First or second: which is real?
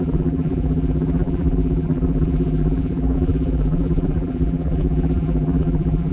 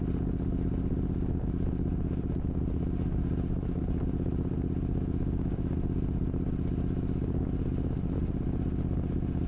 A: second